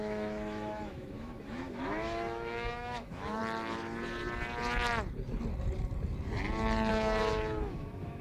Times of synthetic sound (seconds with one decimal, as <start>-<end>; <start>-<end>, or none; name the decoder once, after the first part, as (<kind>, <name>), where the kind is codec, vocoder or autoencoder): 0.0-3.4 (autoencoder, DAC-VAE); 6.9-8.2